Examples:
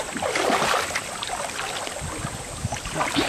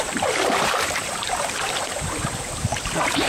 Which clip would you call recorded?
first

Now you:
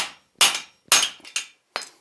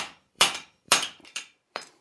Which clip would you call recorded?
first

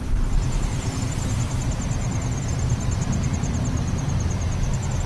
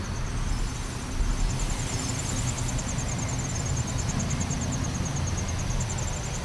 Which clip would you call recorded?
second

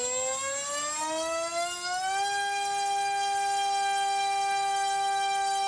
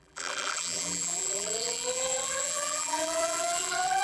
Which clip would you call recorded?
first